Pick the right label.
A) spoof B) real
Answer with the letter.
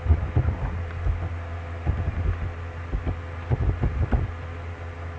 B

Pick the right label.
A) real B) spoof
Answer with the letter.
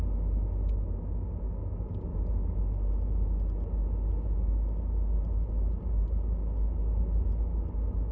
A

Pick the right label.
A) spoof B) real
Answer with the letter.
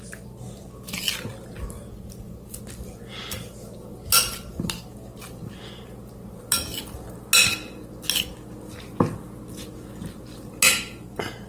B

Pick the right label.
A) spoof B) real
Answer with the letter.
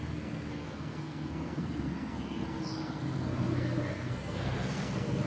A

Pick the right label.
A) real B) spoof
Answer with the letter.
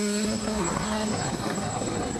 B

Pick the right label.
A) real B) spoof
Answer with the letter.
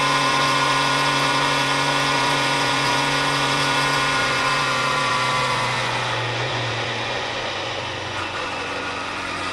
B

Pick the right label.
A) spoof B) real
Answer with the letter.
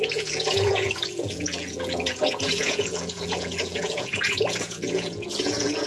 A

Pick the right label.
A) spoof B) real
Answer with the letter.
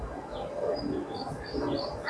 B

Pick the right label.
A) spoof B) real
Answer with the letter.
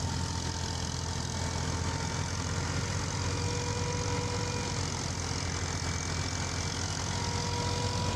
B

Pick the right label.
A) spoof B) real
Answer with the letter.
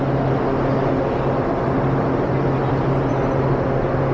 B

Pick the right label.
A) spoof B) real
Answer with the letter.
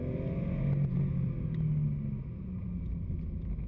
B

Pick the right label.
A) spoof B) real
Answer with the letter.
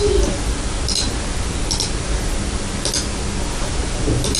B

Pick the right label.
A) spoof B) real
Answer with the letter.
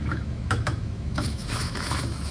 A